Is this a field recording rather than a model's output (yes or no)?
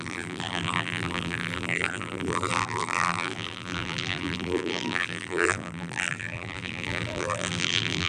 no